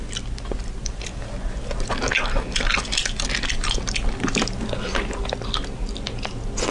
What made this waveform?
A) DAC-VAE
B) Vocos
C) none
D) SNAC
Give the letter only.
C